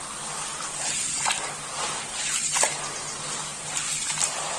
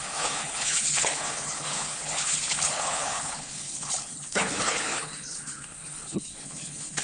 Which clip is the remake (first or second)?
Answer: second